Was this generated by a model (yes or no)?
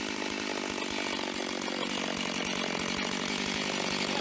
no